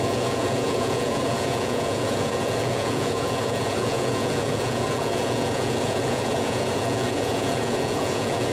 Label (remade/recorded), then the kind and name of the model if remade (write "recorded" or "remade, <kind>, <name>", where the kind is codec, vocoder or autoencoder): remade, vocoder, Vocos